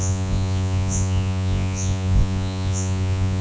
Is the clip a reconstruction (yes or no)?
yes